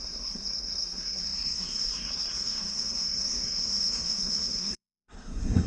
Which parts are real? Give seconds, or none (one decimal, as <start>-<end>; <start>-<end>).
none